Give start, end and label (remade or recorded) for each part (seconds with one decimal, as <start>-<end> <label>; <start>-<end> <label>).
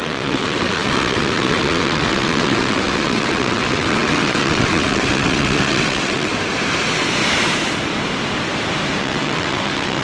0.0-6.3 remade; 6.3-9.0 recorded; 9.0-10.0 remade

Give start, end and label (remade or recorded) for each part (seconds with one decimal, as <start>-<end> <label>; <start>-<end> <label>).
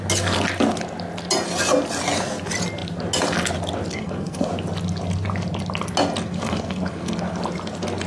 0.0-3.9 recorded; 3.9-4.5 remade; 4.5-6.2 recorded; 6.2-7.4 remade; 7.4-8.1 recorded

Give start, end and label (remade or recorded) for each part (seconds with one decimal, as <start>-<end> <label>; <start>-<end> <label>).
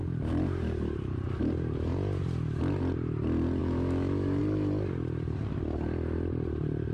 0.0-3.6 recorded; 3.6-4.4 remade; 4.4-6.9 recorded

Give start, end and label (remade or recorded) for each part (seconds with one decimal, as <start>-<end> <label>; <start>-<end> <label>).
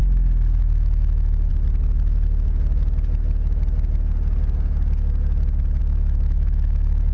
0.0-0.6 recorded; 0.6-1.5 remade; 1.5-5.8 recorded; 5.8-7.1 remade